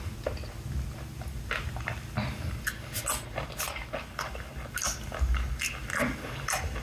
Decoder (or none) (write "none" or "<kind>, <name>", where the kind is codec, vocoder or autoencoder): none